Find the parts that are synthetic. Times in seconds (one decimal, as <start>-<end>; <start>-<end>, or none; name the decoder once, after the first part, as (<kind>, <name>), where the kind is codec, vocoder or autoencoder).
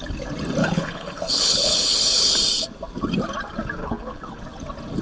0.6-2.3 (codec, HILCodec); 3.8-4.4